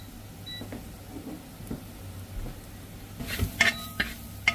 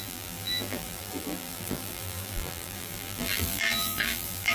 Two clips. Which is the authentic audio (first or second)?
first